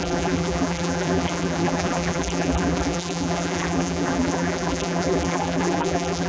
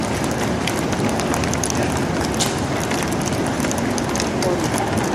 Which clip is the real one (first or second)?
second